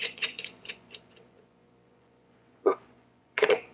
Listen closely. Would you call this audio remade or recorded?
remade